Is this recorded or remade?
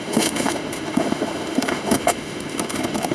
remade